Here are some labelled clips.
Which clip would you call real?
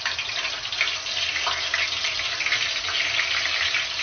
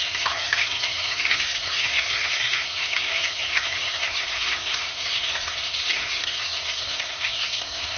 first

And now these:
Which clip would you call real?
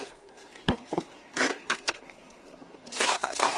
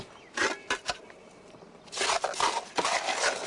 second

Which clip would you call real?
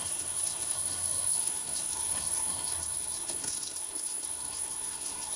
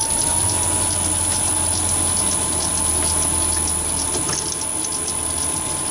second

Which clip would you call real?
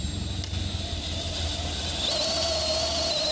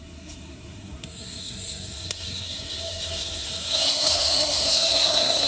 first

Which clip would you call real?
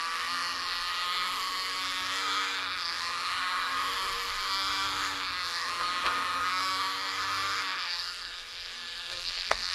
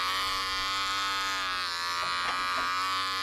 second